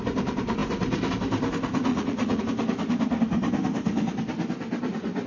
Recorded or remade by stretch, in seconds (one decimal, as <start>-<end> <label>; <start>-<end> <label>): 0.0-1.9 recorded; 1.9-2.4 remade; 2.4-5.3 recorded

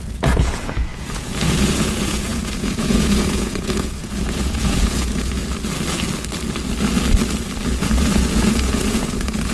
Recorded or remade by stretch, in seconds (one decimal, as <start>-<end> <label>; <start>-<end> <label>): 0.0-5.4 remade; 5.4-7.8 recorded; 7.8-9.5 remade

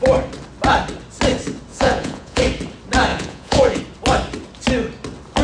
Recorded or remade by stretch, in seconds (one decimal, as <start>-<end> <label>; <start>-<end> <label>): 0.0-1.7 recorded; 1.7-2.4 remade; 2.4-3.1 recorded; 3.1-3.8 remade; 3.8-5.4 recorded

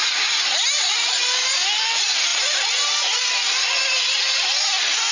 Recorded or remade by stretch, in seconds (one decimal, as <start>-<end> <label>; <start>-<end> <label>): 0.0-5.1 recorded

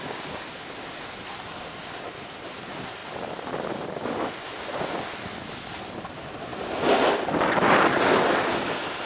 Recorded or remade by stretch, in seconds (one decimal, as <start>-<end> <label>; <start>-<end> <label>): 0.0-9.1 recorded